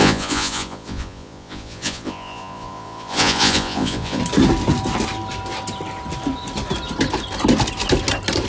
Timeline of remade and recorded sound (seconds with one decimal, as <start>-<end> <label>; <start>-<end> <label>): 0.0-4.2 remade; 4.2-8.5 recorded